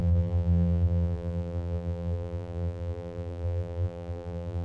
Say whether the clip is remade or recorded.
remade